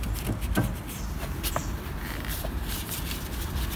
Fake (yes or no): yes